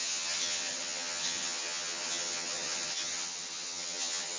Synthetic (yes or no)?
yes